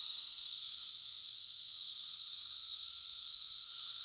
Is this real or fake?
fake